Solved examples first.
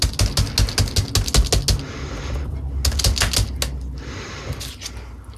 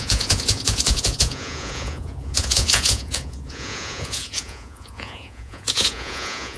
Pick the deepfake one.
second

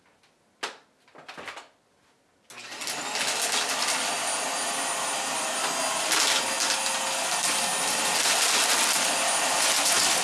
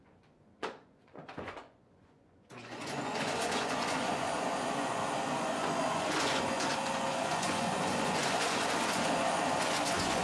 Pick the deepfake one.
second